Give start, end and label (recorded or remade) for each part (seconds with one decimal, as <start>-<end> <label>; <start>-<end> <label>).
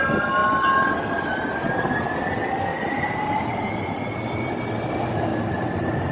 0.0-2.7 recorded; 2.7-4.0 remade; 4.0-5.3 recorded; 5.3-6.1 remade